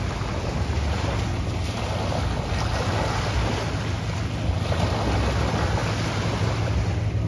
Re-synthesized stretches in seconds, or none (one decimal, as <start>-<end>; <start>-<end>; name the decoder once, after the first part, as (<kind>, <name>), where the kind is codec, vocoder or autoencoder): none